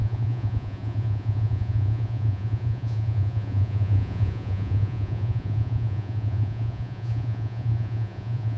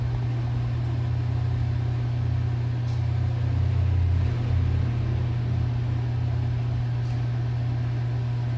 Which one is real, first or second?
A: second